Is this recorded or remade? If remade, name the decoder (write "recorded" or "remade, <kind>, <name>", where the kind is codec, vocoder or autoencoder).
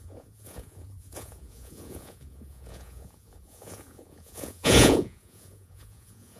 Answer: remade, vocoder, Vocos